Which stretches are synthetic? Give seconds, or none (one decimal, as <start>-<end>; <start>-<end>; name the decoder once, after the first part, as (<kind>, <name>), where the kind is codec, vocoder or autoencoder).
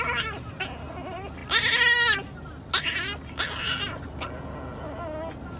none